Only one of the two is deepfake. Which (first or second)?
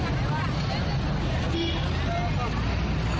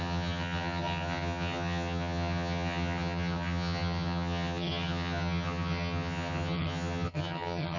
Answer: second